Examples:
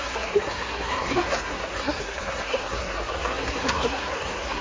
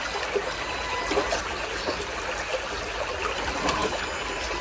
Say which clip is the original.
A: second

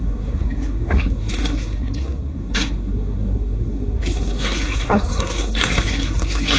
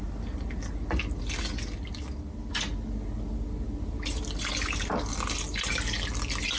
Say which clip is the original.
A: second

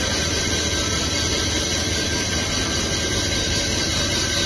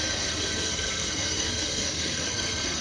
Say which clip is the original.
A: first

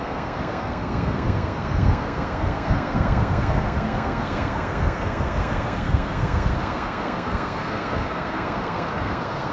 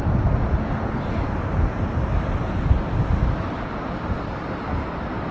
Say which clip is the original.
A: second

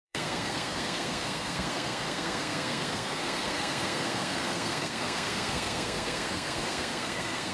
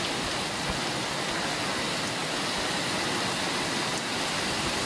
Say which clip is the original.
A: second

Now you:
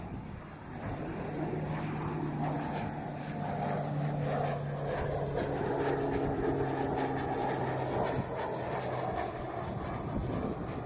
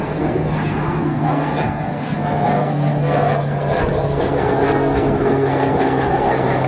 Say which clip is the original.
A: first